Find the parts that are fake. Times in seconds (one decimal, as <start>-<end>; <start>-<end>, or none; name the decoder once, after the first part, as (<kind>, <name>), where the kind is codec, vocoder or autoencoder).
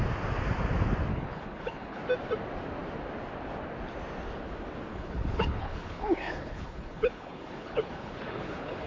1.1-2.0 (codec, HILCodec); 4.9-8.9